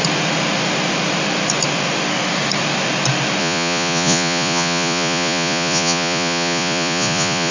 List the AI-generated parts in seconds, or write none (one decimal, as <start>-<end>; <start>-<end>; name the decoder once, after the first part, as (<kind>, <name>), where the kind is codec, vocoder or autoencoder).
3.4-7.5 (vocoder, Vocos)